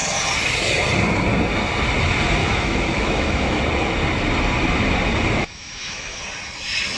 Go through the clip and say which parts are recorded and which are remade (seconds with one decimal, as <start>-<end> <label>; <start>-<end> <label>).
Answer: 0.0-2.4 recorded; 2.4-3.6 remade; 3.6-5.4 recorded; 5.4-6.2 remade; 6.2-7.0 recorded